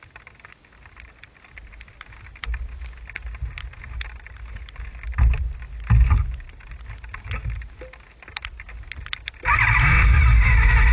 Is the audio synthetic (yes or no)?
no